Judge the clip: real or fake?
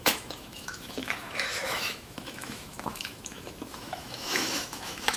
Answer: fake